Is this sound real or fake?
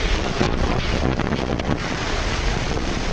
fake